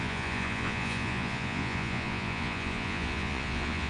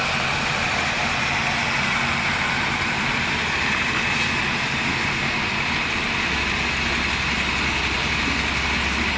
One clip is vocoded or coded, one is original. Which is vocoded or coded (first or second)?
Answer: first